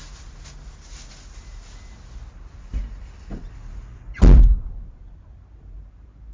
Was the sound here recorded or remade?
recorded